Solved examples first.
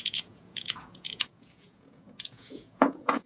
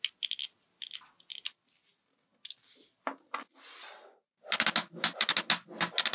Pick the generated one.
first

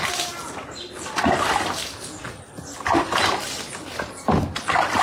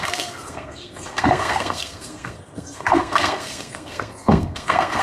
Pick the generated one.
second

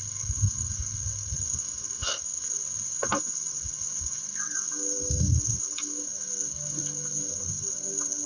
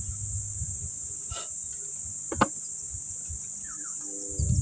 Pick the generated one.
first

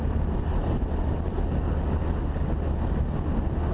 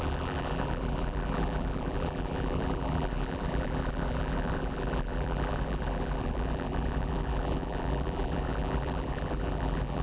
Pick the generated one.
second